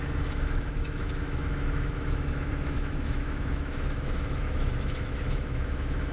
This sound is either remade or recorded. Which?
remade